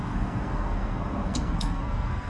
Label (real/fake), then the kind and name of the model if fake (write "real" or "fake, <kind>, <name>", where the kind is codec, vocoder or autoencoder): fake, codec, SNAC